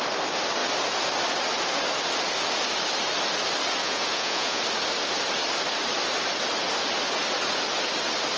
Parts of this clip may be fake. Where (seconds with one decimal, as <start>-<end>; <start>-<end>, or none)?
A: 3.8-4.6